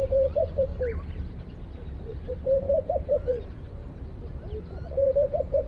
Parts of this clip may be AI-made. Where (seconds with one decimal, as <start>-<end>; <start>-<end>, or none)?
0.0-0.7; 2.0-3.8; 4.6-5.7